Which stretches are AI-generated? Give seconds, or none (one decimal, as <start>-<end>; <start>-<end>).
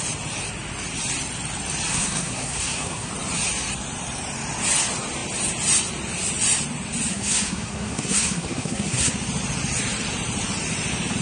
1.9-3.1; 7.1-9.1